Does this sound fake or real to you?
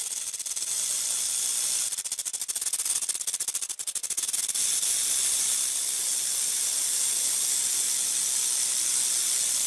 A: real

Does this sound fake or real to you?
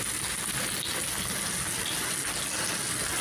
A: real